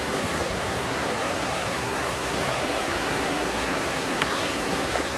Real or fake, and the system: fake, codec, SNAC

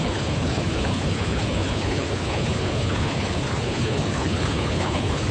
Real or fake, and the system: fake, codec, HILCodec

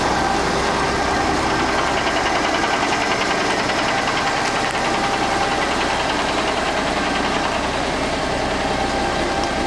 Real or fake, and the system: real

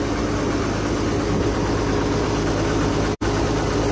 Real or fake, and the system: real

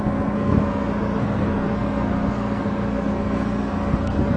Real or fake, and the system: fake, codec, SNAC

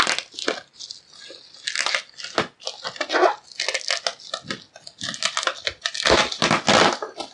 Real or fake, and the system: real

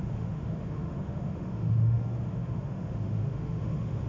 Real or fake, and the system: fake, autoencoder, DAC-VAE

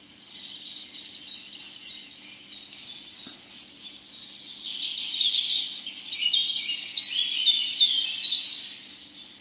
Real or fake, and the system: real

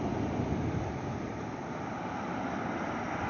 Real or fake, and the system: real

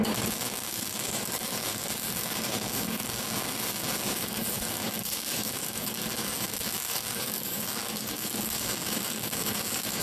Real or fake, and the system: fake, codec, DAC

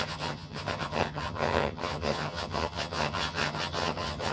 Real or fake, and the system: fake, vocoder, HiFi-GAN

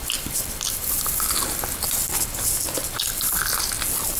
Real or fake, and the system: real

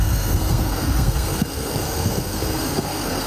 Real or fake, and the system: fake, codec, SNAC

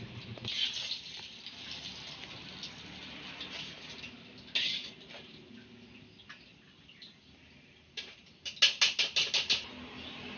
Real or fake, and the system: real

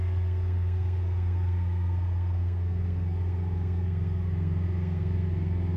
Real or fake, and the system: fake, codec, SNAC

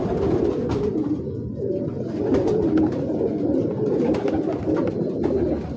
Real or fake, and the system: real